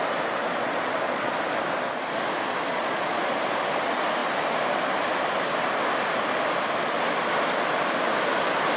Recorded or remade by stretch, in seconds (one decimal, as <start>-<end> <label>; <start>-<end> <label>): 0.0-0.4 recorded; 0.4-1.3 remade; 1.3-2.7 recorded; 2.7-3.2 remade; 3.2-8.8 recorded